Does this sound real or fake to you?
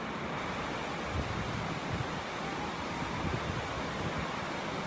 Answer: real